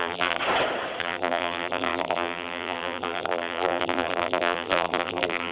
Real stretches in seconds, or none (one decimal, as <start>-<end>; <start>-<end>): 0.4-1.0